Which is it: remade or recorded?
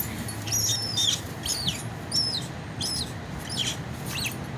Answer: recorded